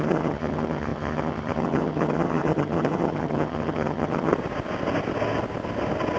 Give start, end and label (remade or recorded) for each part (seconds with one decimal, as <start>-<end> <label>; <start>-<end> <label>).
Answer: 0.0-4.3 remade; 4.3-6.2 recorded